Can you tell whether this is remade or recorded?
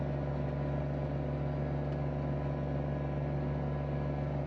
recorded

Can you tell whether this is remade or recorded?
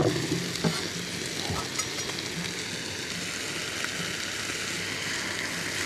recorded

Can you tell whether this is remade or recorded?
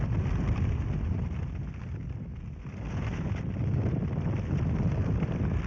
recorded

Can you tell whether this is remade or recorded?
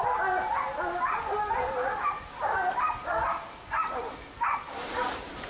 recorded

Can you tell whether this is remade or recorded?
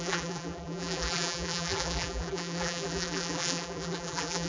remade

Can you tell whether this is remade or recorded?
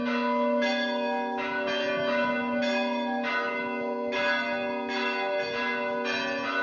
recorded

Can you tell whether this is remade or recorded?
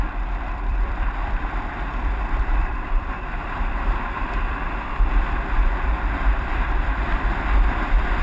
remade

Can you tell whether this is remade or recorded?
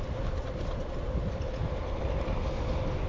recorded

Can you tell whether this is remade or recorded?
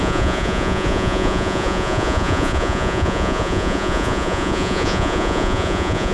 remade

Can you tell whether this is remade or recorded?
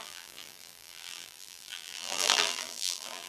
remade